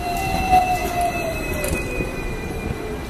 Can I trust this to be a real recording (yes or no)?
no